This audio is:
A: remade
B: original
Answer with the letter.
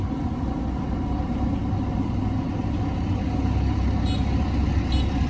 B